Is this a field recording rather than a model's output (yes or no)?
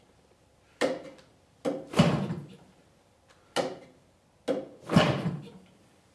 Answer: yes